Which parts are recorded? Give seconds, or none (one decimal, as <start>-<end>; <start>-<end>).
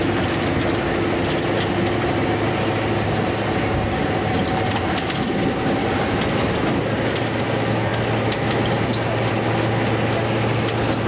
0.0-11.1